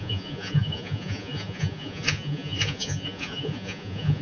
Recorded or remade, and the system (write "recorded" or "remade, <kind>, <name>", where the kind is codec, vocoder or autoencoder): remade, vocoder, Vocos